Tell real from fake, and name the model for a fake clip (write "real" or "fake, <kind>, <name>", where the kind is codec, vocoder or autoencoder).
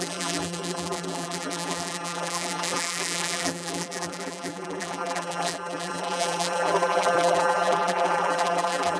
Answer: fake, vocoder, BigVGAN v2